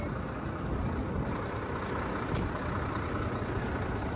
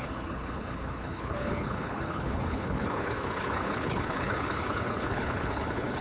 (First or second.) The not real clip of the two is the second